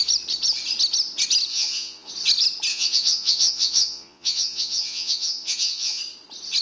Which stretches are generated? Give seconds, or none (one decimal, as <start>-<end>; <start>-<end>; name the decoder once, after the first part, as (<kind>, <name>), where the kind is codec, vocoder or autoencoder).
1.5-2.1 (vocoder, Vocos); 2.7-6.0